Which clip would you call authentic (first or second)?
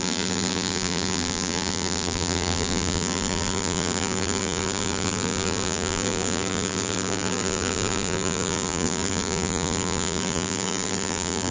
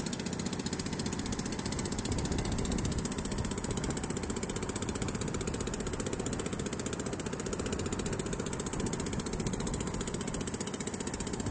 second